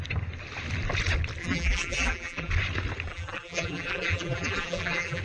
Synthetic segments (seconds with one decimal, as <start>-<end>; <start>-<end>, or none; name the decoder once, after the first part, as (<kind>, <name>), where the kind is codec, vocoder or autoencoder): 1.4-2.5 (vocoder, BigVGAN v2); 3.1-5.2